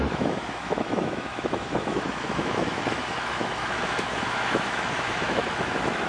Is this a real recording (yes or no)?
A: no